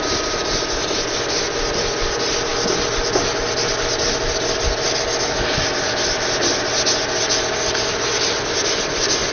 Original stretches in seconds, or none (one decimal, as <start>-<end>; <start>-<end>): 0.0-9.3